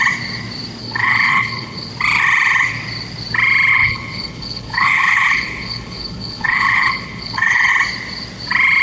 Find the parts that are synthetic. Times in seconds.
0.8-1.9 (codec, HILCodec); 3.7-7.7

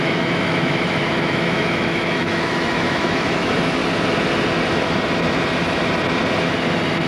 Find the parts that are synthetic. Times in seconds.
0.0-3.8 (autoencoder, DAC-VAE)

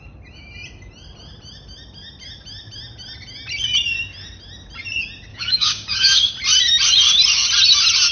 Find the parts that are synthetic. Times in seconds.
5.3-6.3 (codec, DAC)

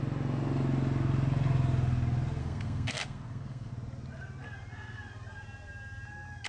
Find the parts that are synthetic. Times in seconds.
2.4-3.7 (codec, SNAC)

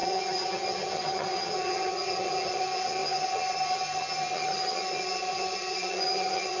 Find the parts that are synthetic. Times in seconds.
0.0-6.6 (vocoder, HiFi-GAN)

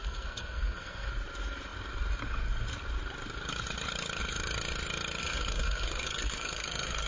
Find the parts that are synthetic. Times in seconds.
0.0-1.1 (codec, SNAC); 5.2-7.1

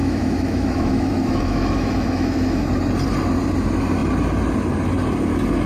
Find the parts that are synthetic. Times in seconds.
0.0-2.7 (autoencoder, DAC-VAE)

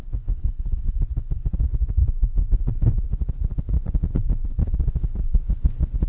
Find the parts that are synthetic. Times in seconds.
0.4-1.0 (codec, HILCodec)